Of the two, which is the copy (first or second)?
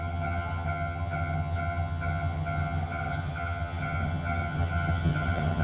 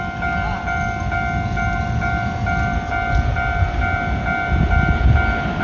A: first